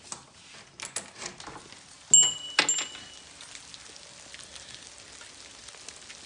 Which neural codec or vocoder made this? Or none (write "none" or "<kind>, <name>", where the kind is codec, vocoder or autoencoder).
none